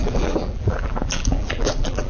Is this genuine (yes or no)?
no